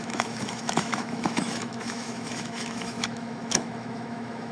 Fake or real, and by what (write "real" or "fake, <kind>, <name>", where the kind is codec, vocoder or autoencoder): fake, autoencoder, DAC-VAE